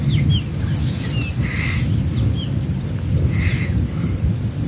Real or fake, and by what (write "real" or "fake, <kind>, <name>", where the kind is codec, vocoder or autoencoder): real